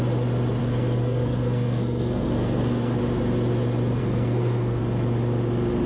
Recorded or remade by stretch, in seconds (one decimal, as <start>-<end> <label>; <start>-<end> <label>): 0.0-0.6 recorded; 0.6-3.0 remade; 3.0-4.0 recorded; 4.0-4.8 remade; 4.8-5.9 recorded